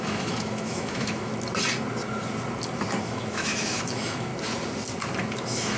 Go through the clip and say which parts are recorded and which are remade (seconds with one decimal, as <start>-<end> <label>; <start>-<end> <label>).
0.0-1.3 remade; 1.3-3.0 recorded; 3.0-4.3 remade; 4.3-5.3 recorded; 5.3-5.8 remade